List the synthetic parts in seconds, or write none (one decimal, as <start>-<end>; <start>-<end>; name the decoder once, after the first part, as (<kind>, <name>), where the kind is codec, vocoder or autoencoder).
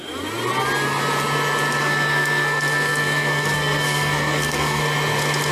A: 1.8-4.8 (codec, SNAC)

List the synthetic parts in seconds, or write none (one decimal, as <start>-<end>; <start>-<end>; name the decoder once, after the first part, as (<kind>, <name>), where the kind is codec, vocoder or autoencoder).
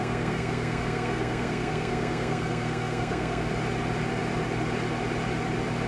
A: 0.0-3.5 (codec, SNAC)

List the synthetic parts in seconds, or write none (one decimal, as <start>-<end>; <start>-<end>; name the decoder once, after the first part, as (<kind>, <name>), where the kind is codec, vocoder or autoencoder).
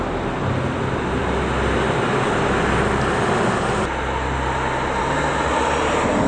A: none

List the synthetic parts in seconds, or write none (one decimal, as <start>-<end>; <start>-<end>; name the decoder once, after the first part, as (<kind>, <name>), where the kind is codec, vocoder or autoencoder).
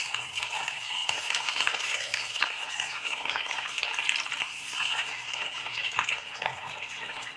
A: 0.0-3.9 (codec, SNAC); 4.4-7.4